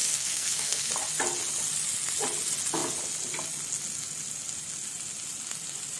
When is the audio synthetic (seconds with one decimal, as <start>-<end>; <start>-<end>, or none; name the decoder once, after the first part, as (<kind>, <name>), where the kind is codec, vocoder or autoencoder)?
0.0-0.9 (codec, SNAC)